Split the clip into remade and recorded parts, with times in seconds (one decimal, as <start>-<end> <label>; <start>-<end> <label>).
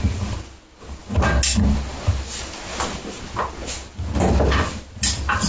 0.0-5.5 recorded